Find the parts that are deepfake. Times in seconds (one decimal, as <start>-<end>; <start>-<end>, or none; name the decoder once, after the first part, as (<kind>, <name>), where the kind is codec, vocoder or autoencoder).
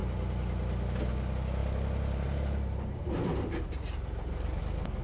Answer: 1.6-4.6 (vocoder, BigVGAN v2)